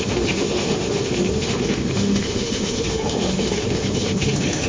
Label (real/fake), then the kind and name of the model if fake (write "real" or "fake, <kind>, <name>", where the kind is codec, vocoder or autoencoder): fake, autoencoder, DAC-VAE